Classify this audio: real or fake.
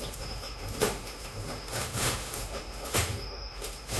fake